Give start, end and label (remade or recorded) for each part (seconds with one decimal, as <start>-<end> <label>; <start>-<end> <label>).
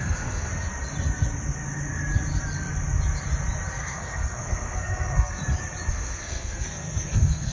0.0-0.5 remade; 0.5-3.8 recorded; 3.8-5.4 remade; 5.4-5.9 recorded; 5.9-7.5 remade